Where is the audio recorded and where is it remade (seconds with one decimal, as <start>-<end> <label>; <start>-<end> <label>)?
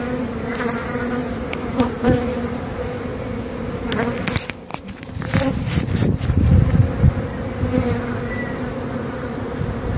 0.0-1.2 recorded; 1.2-2.6 remade; 2.6-4.7 recorded; 4.7-7.2 remade; 7.2-10.0 recorded